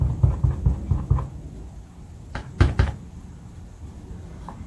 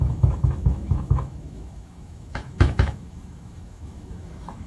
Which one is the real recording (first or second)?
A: first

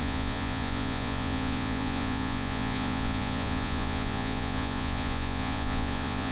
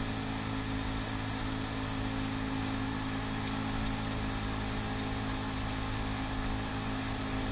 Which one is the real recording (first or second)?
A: second